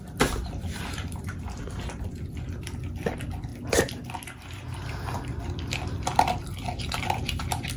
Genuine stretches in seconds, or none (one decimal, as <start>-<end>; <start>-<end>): 3.5-4.6